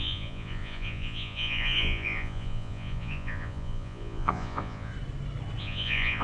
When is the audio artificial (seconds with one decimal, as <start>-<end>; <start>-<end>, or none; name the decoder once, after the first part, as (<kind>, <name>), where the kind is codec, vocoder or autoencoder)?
0.0-4.9 (vocoder, Vocos); 5.6-6.2